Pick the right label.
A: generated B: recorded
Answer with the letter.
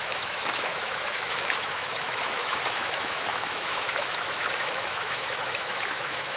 A